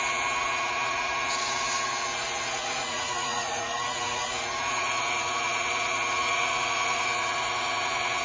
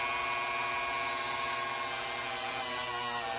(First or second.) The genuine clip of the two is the second